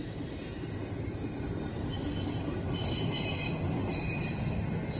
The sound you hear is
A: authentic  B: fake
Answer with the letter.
A